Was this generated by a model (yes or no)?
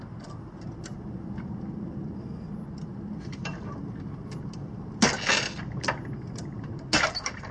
no